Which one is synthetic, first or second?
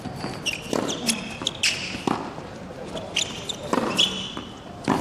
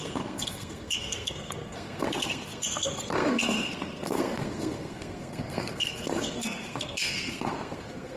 second